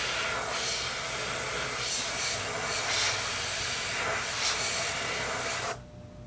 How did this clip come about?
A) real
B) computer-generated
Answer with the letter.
A